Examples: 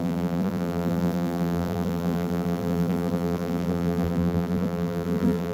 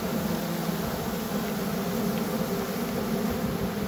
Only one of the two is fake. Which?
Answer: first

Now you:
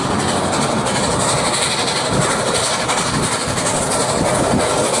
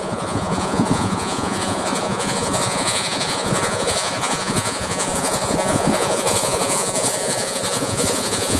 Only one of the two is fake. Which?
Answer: second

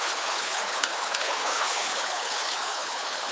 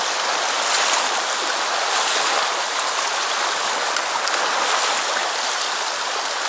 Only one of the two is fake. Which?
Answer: first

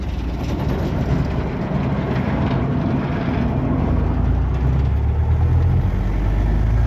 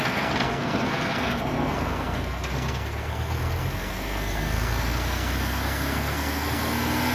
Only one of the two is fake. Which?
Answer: second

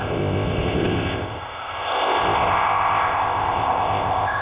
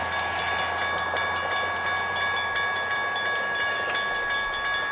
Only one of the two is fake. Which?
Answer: first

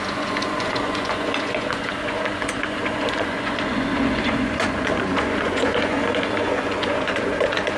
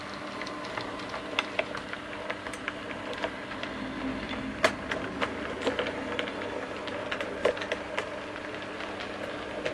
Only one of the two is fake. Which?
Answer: first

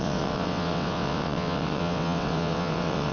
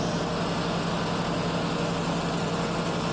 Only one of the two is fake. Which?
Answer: first